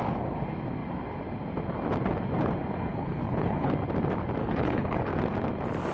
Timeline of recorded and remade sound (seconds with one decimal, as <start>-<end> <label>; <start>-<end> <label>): 0.0-2.9 recorded; 2.9-3.7 remade; 3.7-4.4 recorded; 4.4-5.1 remade; 5.1-5.9 recorded